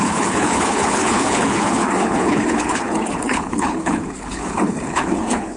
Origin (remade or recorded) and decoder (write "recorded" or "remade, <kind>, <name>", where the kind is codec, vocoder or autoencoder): remade, codec, HILCodec